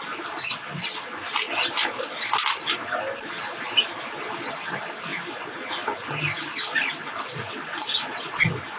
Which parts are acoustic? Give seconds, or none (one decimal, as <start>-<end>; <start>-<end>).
0.0-8.8